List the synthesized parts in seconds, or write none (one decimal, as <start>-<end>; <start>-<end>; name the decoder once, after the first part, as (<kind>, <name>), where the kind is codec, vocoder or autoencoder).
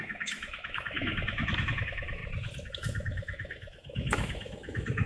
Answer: 0.0-2.2 (autoencoder, DAC-VAE); 2.7-5.1